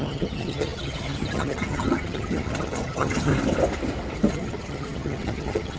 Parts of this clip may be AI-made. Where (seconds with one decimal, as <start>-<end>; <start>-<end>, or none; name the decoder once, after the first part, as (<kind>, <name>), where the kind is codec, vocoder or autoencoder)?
0.0-3.3 (vocoder, HiFi-GAN); 4.3-5.8